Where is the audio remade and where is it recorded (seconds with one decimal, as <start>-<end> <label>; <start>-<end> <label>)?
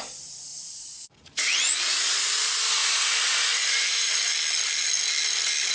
0.0-0.5 recorded; 0.5-2.0 remade; 2.0-2.8 recorded; 2.8-4.1 remade; 4.1-5.7 recorded